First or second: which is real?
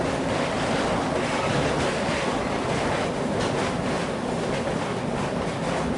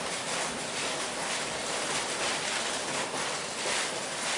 first